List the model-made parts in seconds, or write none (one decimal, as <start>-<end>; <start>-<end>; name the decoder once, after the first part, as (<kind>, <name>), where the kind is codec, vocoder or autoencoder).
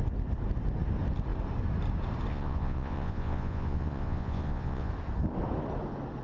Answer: 2.3-4.9 (vocoder, Vocos)